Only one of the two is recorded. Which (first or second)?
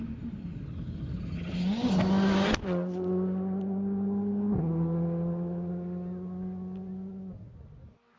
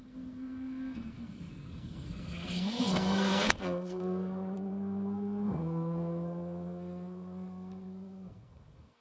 first